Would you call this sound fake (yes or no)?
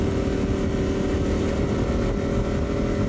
no